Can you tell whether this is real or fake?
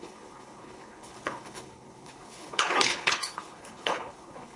fake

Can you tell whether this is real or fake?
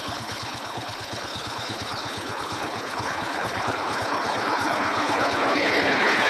fake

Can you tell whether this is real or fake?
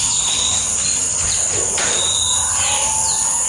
real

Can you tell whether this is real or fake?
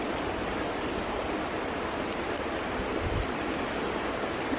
real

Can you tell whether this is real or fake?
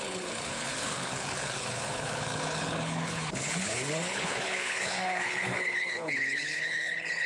fake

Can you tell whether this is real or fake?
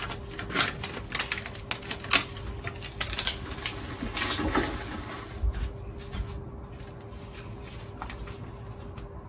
real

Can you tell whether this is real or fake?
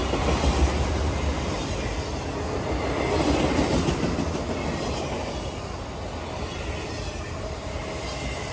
real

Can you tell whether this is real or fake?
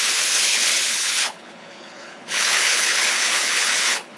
fake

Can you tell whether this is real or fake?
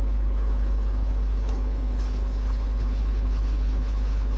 fake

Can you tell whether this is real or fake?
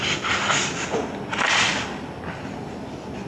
real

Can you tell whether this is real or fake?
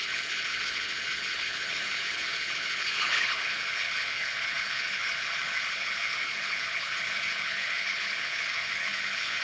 fake